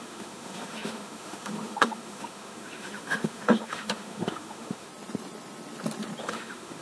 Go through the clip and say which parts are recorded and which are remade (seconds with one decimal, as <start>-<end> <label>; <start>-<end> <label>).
0.0-4.9 remade; 4.9-6.2 recorded; 6.2-6.8 remade